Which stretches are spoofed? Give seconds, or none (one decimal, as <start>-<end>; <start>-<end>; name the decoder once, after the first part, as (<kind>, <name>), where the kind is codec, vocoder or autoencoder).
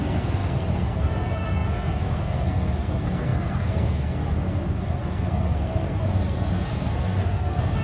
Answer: 0.0-7.8 (codec, SNAC)